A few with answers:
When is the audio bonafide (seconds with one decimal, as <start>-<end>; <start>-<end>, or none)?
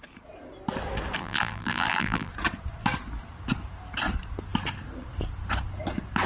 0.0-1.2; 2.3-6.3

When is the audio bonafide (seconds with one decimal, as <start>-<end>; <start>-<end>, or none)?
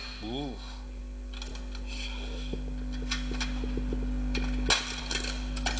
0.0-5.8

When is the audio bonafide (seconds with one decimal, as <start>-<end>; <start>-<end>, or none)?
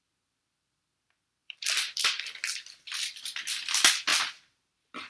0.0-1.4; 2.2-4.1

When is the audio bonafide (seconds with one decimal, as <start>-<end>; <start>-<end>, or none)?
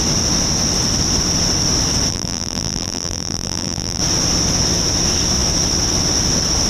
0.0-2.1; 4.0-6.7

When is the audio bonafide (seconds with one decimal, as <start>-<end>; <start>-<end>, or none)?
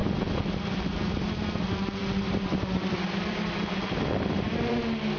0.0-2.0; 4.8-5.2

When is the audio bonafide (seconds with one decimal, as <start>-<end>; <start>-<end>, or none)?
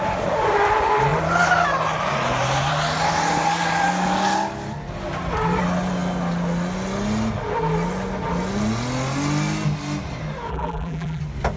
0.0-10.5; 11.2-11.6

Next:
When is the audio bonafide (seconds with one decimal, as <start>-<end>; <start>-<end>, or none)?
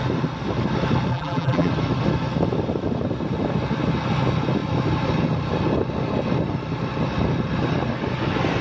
0.0-1.1; 1.7-8.6